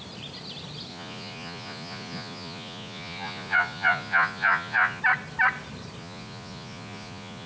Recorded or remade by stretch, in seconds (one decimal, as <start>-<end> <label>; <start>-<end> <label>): 0.0-0.9 recorded; 0.9-5.0 remade; 5.0-6.0 recorded; 6.0-7.5 remade